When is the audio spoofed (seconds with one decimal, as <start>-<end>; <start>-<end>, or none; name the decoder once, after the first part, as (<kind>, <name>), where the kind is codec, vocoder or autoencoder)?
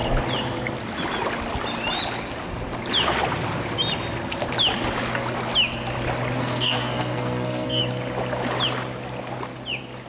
6.4-7.8 (codec, SNAC)